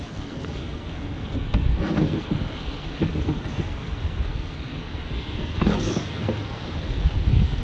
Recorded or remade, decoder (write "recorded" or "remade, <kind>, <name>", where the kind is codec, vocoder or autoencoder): remade, codec, SNAC